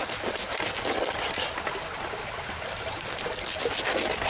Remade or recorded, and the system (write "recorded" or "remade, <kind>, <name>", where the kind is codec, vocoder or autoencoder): recorded